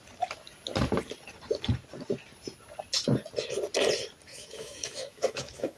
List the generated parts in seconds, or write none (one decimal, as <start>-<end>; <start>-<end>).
4.3-5.8